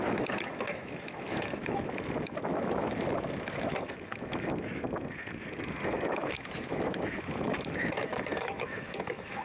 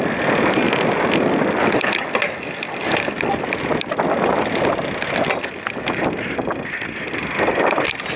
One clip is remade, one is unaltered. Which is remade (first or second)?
first